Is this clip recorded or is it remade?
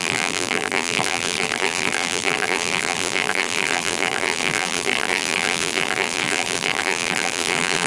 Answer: remade